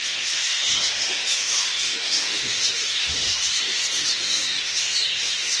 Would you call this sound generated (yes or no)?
yes